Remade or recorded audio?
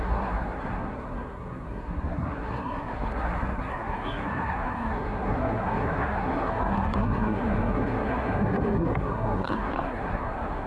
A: remade